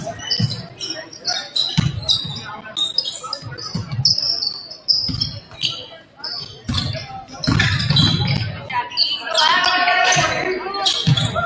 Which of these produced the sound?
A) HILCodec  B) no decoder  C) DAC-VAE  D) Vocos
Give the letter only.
B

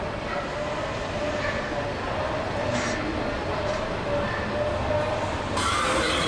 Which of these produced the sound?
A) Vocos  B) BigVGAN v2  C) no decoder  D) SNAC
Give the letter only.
C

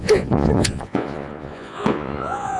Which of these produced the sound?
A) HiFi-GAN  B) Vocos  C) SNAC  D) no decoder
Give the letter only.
B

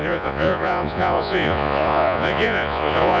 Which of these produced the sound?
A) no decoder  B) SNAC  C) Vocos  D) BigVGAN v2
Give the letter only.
C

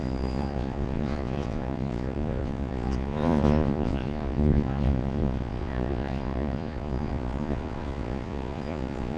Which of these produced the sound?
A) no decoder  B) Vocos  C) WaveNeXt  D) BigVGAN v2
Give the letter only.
B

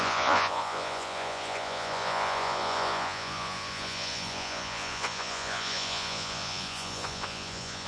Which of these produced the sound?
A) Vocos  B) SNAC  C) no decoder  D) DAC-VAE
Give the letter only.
A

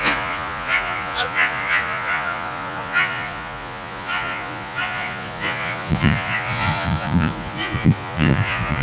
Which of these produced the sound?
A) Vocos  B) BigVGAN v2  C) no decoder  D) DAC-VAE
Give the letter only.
A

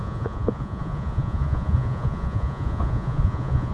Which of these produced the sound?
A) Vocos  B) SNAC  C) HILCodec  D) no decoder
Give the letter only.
A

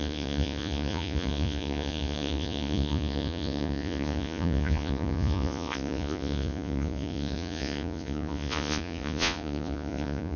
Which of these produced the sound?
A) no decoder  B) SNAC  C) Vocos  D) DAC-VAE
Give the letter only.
C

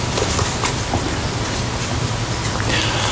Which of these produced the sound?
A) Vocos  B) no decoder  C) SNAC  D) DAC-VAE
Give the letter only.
B